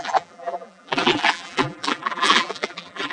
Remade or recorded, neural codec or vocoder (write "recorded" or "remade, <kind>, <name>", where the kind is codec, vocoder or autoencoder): remade, vocoder, BigVGAN v2